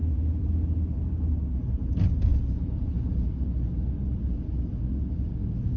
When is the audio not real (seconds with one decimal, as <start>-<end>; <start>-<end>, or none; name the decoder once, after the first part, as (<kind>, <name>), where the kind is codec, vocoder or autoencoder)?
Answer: none